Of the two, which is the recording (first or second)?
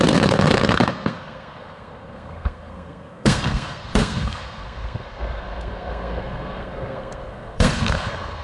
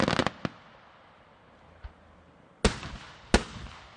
second